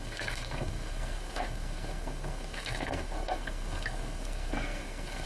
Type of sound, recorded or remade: remade